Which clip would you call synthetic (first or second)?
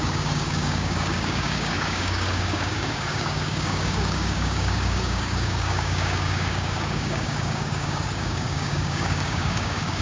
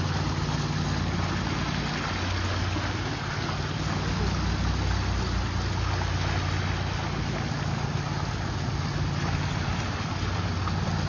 first